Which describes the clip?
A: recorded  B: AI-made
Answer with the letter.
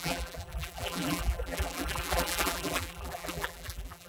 B